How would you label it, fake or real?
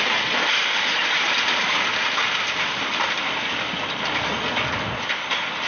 real